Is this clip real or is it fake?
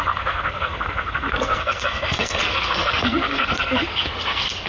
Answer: fake